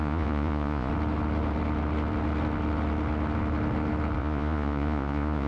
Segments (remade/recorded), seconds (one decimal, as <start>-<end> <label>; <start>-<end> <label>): 0.0-0.9 remade; 0.9-4.2 recorded; 4.2-5.5 remade